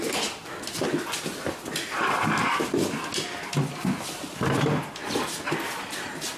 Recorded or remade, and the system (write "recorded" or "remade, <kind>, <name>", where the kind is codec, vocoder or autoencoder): recorded